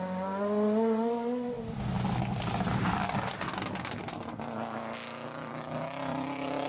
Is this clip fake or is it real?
real